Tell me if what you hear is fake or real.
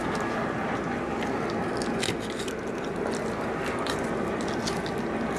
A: real